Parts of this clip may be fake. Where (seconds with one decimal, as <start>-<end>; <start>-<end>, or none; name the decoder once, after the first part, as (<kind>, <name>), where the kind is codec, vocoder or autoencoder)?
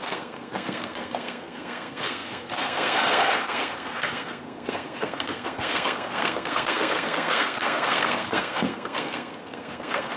0.0-10.2 (codec, SNAC)